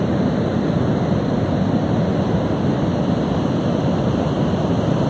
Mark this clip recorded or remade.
recorded